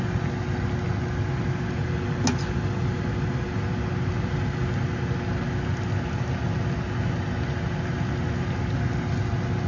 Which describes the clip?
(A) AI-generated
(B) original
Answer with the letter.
B